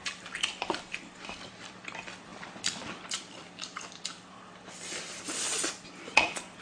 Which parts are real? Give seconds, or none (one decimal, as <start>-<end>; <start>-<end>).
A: none